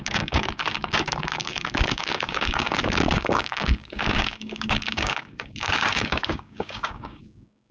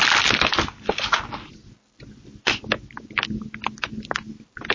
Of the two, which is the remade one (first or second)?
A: first